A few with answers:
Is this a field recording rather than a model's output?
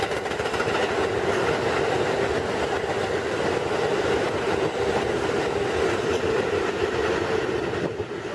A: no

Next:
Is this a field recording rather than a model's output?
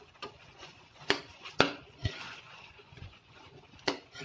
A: no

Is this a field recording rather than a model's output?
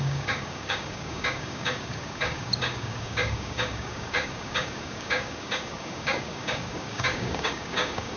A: no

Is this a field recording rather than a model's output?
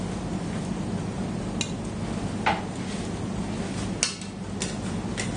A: yes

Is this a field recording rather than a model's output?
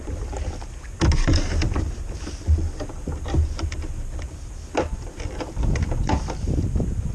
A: yes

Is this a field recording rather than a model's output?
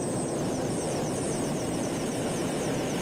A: yes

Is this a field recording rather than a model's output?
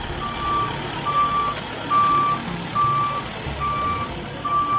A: yes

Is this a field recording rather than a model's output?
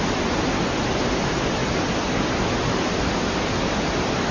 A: yes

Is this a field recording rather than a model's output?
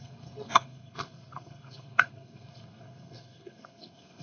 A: no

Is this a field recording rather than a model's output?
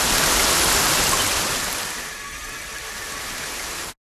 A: yes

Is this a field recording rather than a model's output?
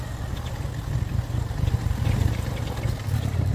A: yes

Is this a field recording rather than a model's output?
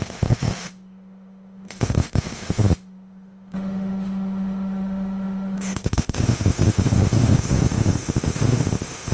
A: no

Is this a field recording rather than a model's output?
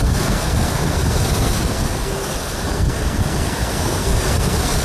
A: no